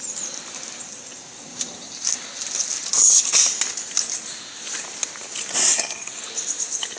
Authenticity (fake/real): real